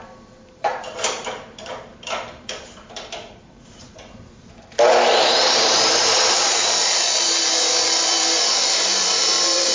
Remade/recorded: remade